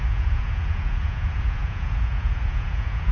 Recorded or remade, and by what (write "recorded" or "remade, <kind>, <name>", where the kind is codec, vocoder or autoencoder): remade, vocoder, Vocos